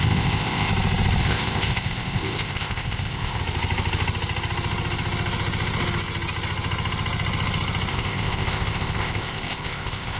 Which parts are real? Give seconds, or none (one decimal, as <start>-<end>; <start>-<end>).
0.7-1.2; 3.4-7.9